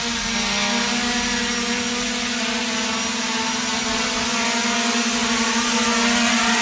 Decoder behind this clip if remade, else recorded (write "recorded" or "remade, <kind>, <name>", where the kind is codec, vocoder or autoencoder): recorded